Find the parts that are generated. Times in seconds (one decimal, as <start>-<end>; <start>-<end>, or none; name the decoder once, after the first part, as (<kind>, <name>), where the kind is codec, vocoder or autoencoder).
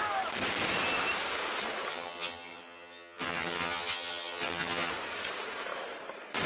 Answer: 1.9-4.9 (vocoder, HiFi-GAN)